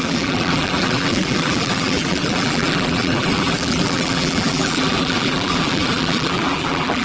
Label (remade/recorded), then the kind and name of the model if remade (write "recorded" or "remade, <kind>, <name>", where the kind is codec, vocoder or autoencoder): remade, vocoder, BigVGAN v2